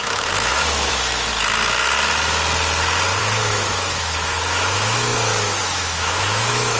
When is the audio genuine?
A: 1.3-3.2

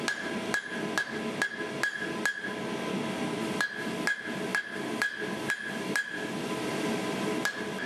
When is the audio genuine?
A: 0.0-7.9

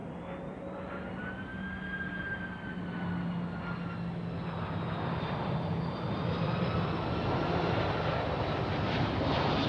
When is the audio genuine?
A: 0.0-9.7

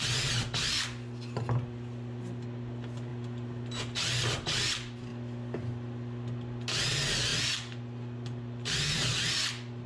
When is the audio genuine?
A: 0.0-9.9

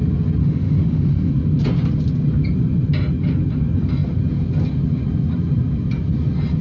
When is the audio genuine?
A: 0.0-0.4; 1.3-6.6

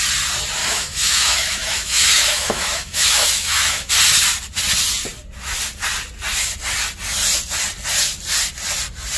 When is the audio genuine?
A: 0.0-0.6; 3.9-9.2

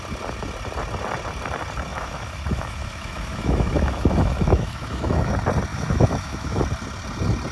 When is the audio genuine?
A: 0.0-1.9; 5.3-5.7; 6.6-7.5